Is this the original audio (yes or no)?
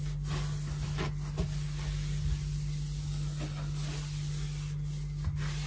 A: yes